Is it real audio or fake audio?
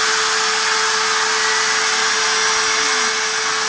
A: real